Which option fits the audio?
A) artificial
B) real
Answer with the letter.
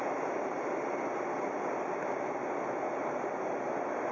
B